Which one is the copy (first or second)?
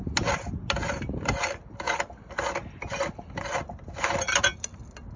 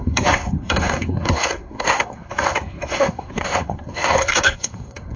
second